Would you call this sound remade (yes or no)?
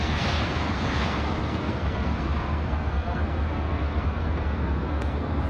yes